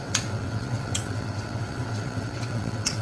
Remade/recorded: remade